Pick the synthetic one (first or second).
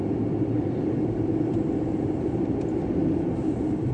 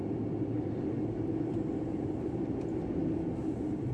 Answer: first